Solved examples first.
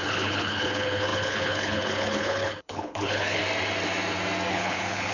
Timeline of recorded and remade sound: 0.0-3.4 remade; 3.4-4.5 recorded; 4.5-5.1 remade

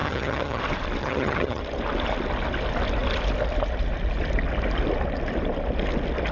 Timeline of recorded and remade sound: 0.0-0.6 remade; 0.6-1.0 recorded; 1.0-1.6 remade; 1.6-6.3 recorded

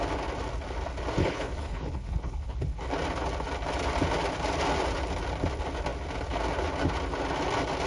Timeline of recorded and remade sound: 0.0-1.2 recorded; 1.2-2.9 remade; 2.9-7.9 recorded

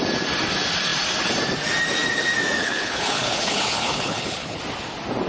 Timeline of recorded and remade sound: 0.0-2.6 recorded; 2.6-4.6 remade; 4.6-5.3 recorded